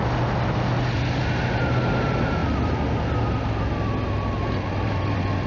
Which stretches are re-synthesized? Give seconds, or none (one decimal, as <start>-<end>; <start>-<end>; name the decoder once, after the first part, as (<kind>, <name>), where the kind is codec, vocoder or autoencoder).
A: none